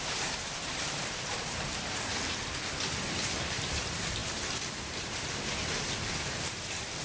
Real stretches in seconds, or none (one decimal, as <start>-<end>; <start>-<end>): 2.1-3.5